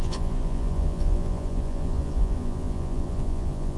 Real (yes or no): no